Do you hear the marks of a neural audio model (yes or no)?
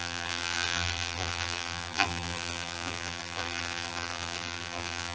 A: yes